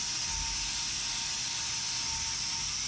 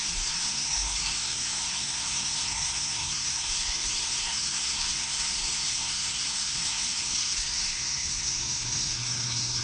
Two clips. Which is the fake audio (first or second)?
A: second